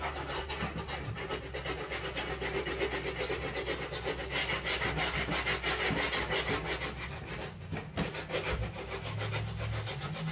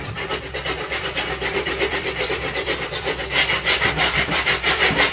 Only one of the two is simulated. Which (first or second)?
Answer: second